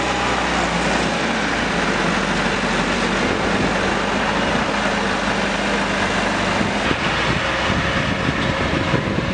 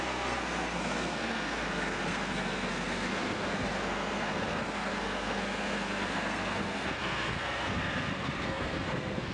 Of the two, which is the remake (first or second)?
second